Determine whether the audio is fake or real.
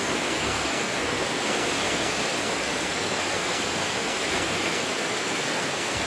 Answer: fake